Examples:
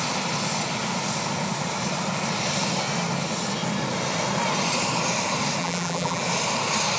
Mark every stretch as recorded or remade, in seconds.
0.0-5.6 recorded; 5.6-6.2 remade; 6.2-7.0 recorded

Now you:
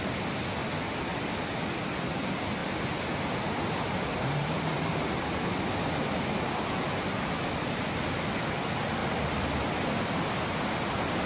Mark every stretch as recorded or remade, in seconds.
0.0-2.6 recorded; 2.6-5.6 remade; 5.6-9.0 recorded; 9.0-9.7 remade; 9.7-11.3 recorded

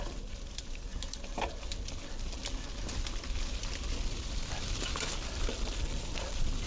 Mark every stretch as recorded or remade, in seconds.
0.0-0.9 remade; 0.9-1.6 recorded; 1.6-2.4 remade; 2.4-5.5 recorded; 5.5-6.7 remade

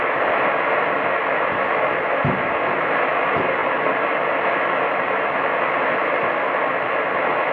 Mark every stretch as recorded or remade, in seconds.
0.0-3.6 recorded; 3.6-7.0 remade; 7.0-7.5 recorded

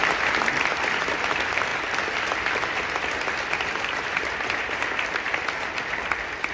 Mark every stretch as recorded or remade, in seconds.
0.0-0.8 recorded; 0.8-1.7 remade; 1.7-5.6 recorded; 5.6-6.5 remade

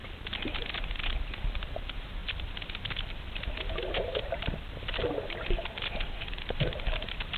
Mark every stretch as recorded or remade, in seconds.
0.0-1.1 recorded; 1.1-2.2 remade; 2.2-3.1 recorded; 3.1-7.4 remade

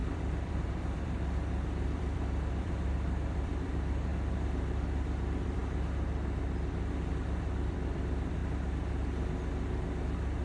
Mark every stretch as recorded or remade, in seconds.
0.0-4.1 remade; 4.1-4.7 recorded; 4.7-5.6 remade; 5.6-7.1 recorded; 7.1-8.4 remade; 8.4-10.4 recorded

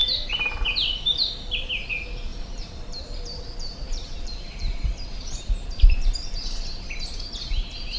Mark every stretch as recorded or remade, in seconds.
0.0-0.6 remade; 0.6-2.3 recorded; 2.3-6.6 remade; 6.6-8.0 recorded